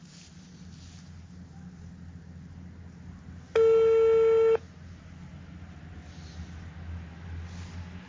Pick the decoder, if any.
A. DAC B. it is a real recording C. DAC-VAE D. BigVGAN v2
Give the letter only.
B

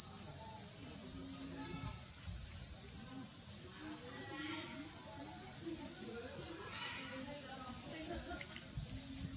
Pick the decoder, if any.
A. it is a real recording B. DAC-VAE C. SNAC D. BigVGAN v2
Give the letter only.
A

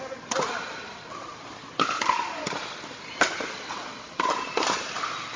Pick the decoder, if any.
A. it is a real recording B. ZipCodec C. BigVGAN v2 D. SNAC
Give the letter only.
A